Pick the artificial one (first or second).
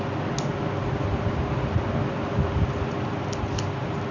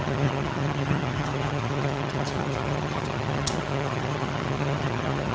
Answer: second